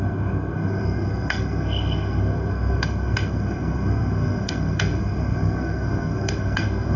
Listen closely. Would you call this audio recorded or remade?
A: remade